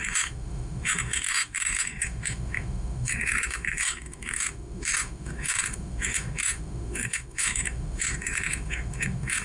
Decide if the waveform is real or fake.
fake